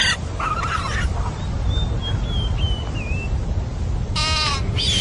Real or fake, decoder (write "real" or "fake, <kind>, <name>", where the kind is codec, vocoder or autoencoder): real